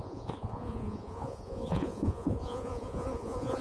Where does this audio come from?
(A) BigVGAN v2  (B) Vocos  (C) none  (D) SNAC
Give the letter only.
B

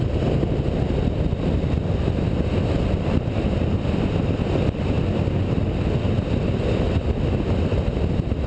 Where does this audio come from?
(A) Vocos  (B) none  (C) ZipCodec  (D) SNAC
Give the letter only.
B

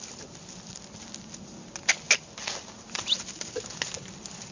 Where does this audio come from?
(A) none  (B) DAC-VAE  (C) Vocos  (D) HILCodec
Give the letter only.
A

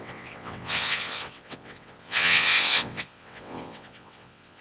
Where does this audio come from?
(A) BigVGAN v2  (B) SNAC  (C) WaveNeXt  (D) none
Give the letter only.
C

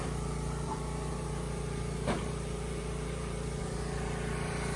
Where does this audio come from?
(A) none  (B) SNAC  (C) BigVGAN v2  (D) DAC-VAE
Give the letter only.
C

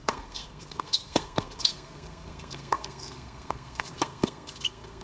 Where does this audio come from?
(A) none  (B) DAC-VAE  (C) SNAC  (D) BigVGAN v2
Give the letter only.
C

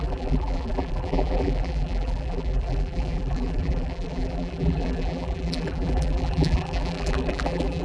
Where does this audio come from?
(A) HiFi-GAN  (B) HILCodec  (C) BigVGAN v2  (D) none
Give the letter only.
C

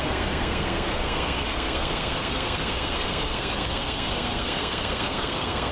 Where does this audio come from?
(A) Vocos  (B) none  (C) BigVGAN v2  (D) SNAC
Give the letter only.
D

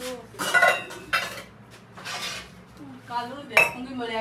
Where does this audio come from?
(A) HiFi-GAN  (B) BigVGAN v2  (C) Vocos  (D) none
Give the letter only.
D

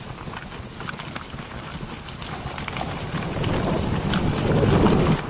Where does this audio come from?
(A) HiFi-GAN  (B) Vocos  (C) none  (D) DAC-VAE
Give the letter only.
C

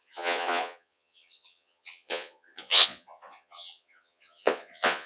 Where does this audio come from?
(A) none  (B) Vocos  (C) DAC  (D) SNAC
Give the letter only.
B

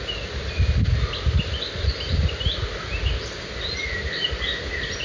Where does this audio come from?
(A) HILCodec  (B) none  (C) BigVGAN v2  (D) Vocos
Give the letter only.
B